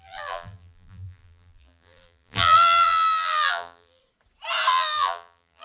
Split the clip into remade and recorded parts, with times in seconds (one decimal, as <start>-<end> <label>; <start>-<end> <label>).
0.0-4.0 remade; 4.0-4.7 recorded; 4.7-5.6 remade